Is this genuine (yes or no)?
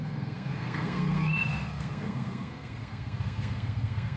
no